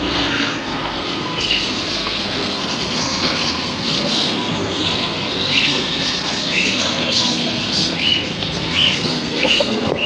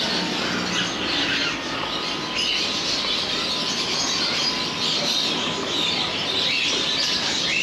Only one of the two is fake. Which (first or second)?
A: first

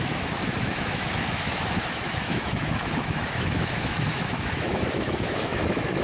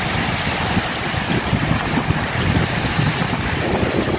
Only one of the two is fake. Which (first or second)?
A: first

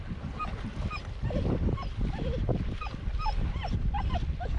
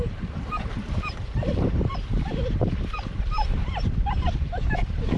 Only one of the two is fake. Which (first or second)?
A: second